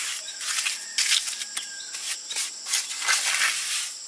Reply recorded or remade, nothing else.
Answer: recorded